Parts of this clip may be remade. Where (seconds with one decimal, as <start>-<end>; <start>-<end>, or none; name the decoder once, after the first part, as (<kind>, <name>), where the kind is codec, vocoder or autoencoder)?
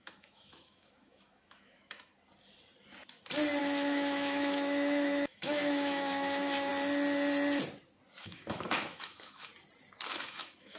0.0-2.1 (autoencoder, DAC-VAE); 3.6-6.7; 8.2-9.5; 10.1-10.8